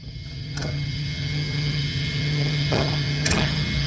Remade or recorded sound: remade